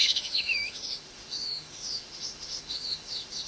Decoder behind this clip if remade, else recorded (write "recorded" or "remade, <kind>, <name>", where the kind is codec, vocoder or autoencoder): remade, autoencoder, DAC-VAE